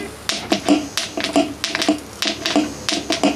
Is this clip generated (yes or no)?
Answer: no